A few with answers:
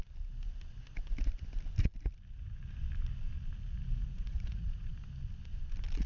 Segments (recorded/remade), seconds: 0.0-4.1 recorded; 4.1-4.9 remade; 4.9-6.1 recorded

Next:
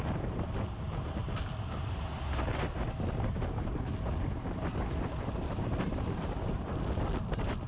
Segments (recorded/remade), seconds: 0.0-7.7 recorded

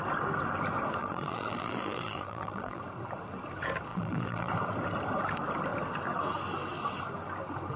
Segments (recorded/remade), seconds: 0.0-1.0 recorded; 1.0-2.8 remade; 2.8-3.9 recorded; 3.9-4.5 remade; 4.5-7.8 recorded

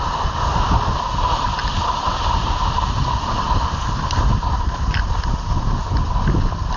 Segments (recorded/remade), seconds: 0.0-1.6 recorded; 1.6-5.1 remade; 5.1-6.8 recorded